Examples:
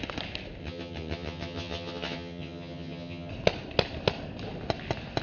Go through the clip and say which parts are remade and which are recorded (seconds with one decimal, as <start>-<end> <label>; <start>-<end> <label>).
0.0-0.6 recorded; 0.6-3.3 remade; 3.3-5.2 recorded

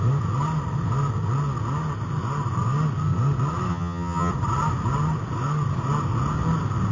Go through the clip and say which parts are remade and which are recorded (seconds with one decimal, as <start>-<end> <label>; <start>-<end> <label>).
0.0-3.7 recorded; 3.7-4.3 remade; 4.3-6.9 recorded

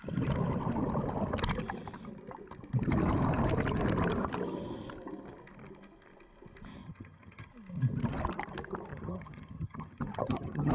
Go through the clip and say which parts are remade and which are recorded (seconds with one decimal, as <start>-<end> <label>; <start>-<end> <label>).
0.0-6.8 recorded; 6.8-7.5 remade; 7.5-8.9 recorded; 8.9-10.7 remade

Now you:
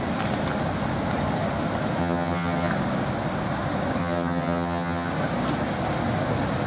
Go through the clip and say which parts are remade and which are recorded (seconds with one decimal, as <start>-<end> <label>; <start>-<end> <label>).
0.0-2.0 recorded; 2.0-2.7 remade; 2.7-4.0 recorded; 4.0-5.1 remade; 5.1-6.7 recorded

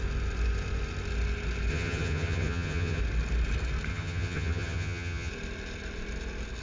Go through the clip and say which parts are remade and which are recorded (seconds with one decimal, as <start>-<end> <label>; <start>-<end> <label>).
0.0-1.7 recorded; 1.7-3.0 remade; 3.0-3.9 recorded; 3.9-5.3 remade; 5.3-6.6 recorded

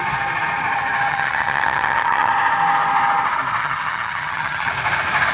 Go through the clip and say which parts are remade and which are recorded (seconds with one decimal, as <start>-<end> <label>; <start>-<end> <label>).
0.0-1.1 recorded; 1.1-2.3 remade; 2.3-3.6 recorded; 3.6-4.7 remade; 4.7-5.3 recorded

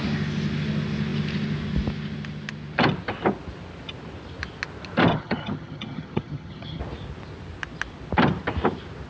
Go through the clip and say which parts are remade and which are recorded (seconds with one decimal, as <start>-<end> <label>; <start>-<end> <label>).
0.0-5.1 recorded; 5.1-6.8 remade; 6.8-9.1 recorded

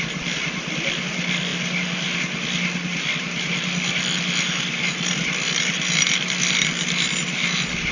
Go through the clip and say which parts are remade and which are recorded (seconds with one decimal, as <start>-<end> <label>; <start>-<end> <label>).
0.0-7.9 recorded